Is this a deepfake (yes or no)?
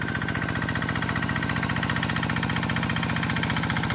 no